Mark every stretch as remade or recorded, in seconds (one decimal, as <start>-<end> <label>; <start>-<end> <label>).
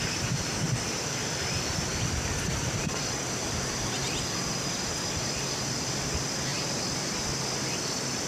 0.0-8.3 recorded